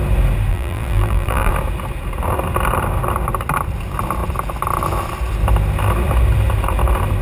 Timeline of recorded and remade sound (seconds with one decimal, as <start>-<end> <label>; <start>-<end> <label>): 0.0-0.5 recorded; 0.5-1.5 remade; 1.5-7.2 recorded